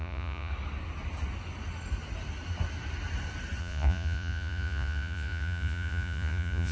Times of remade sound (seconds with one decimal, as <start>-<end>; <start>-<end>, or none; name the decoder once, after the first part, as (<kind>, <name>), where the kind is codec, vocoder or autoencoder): 0.0-0.5 (vocoder, Vocos); 3.6-6.7